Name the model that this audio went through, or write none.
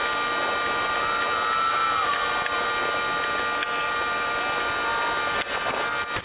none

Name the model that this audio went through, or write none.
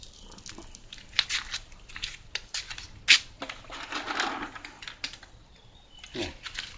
none